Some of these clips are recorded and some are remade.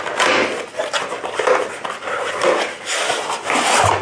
recorded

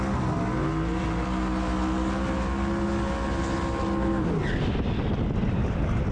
recorded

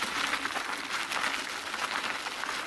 recorded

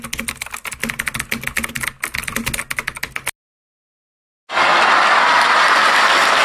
recorded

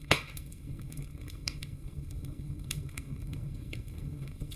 remade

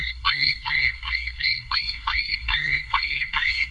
remade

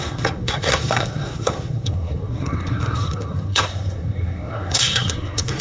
remade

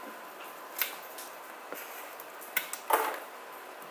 recorded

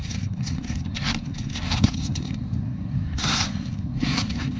remade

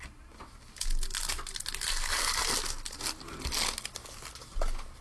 recorded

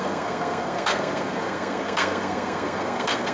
remade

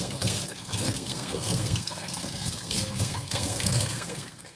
remade